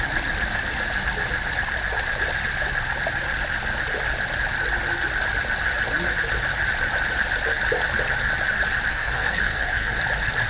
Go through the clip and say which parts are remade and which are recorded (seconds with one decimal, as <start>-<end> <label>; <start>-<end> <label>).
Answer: 0.0-8.9 recorded; 8.9-10.0 remade; 10.0-10.5 recorded